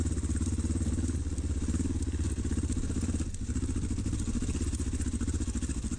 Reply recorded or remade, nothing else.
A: recorded